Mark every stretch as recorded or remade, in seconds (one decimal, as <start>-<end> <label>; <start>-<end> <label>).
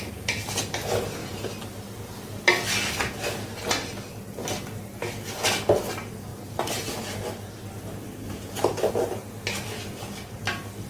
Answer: 0.0-10.9 recorded